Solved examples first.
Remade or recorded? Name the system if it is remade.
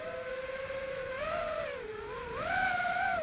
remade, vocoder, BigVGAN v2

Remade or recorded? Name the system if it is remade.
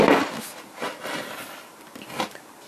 recorded